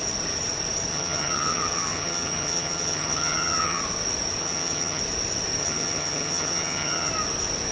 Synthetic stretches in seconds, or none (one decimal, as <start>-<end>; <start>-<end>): 0.9-3.8; 4.4-5.0; 5.6-7.1